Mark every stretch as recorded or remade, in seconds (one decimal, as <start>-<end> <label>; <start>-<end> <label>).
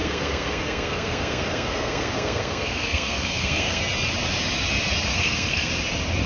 0.0-3.8 remade; 3.8-5.1 recorded; 5.1-5.7 remade; 5.7-6.3 recorded